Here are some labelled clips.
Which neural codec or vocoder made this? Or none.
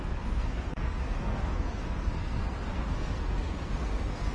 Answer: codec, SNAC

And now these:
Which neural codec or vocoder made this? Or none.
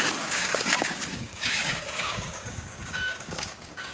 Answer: codec, DAC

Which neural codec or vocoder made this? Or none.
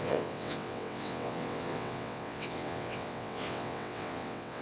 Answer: vocoder, WaveNeXt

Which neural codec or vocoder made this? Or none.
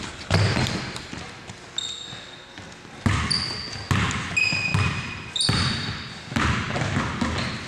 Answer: none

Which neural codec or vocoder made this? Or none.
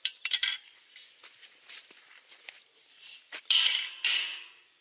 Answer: vocoder, BigVGAN v2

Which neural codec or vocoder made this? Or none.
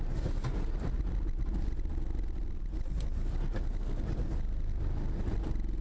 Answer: none